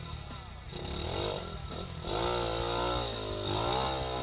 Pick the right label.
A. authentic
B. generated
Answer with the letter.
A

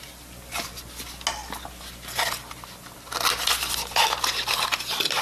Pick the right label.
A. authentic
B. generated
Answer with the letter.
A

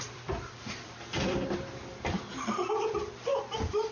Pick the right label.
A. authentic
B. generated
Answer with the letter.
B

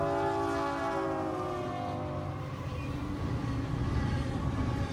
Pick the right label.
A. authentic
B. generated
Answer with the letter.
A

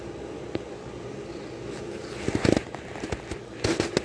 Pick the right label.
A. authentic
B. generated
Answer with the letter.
A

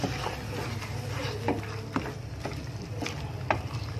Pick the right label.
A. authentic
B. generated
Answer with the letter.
A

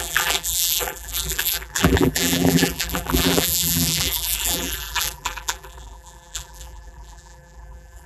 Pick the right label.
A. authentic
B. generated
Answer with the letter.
B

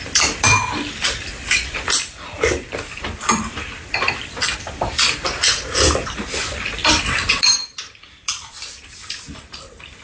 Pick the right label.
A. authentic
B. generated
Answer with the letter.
B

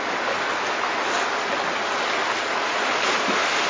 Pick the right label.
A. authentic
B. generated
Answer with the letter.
A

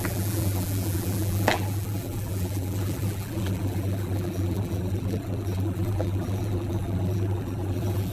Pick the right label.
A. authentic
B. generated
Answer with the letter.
B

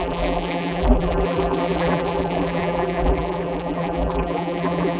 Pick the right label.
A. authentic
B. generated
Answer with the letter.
B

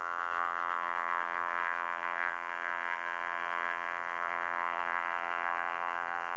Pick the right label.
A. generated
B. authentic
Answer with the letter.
A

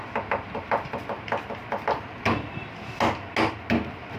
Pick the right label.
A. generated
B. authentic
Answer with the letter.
B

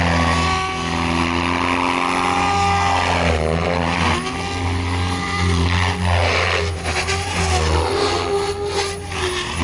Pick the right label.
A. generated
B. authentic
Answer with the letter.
B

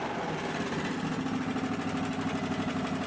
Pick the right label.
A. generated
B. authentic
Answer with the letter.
B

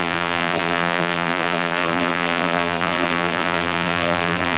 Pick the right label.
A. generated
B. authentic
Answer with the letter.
A